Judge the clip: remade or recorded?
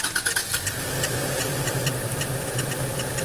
recorded